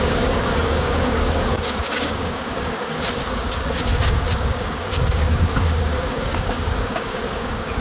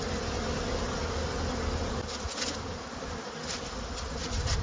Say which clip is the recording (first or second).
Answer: second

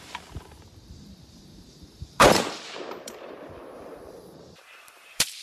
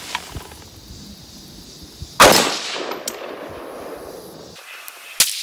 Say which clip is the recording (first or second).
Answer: second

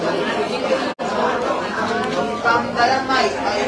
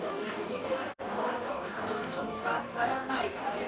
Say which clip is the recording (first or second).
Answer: first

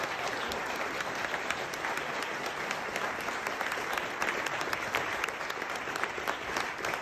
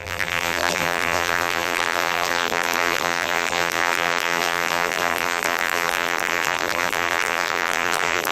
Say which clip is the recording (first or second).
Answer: first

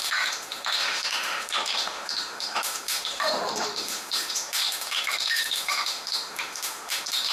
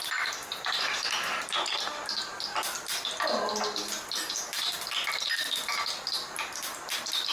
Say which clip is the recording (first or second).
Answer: second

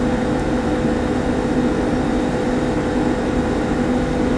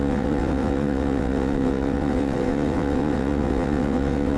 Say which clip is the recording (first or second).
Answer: first